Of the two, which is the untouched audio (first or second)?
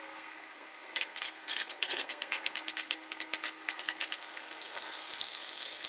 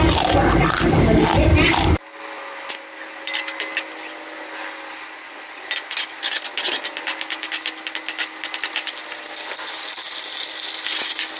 second